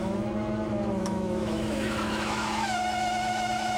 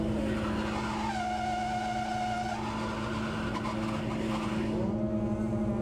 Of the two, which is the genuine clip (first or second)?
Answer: second